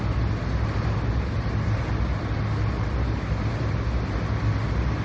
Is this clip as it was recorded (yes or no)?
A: yes